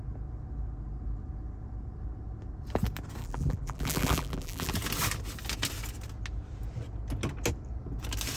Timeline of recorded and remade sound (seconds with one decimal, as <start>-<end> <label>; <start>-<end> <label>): 0.0-3.2 recorded; 3.2-4.7 remade; 4.7-8.4 recorded